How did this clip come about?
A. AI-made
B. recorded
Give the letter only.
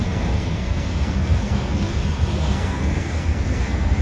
A